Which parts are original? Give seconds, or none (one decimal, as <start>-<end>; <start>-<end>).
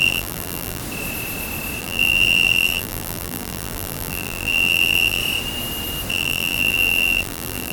0.8-1.8; 5.2-6.1